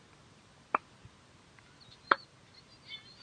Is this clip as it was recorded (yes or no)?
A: yes